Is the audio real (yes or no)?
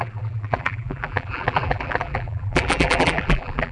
no